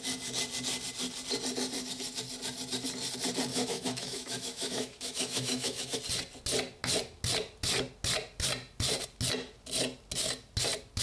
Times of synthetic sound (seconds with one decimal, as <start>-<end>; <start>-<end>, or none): 3.5-6.0